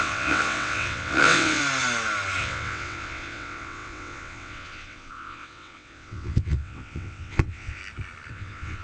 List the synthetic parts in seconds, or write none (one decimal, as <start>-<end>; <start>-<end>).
0.0-1.6; 2.4-7.8; 8.3-8.8